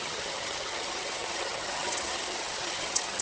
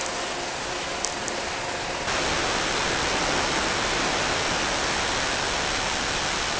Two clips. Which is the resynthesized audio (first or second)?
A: first